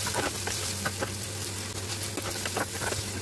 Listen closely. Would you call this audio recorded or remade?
recorded